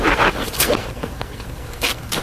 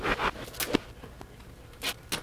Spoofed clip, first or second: first